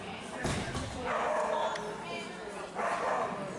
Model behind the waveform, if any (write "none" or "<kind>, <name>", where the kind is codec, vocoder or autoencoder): none